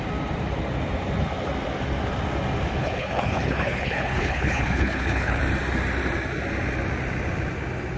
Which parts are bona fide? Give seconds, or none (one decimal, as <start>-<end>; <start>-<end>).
0.0-2.8; 5.4-8.0